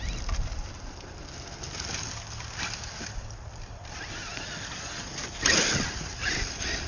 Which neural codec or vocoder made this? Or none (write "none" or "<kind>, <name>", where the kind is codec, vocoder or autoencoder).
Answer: none